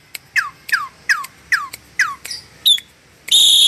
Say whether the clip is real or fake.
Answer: real